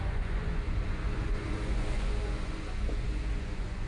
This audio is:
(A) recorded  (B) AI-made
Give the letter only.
B